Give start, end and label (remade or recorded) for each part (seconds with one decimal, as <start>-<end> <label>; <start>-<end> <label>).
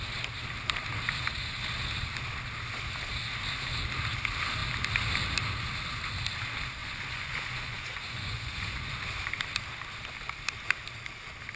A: 0.0-6.8 recorded; 6.8-8.9 remade; 8.9-11.6 recorded